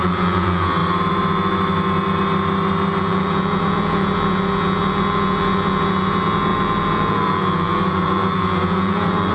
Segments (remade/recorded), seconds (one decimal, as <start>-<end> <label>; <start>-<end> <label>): 0.0-0.8 remade; 0.8-3.0 recorded; 3.0-9.3 remade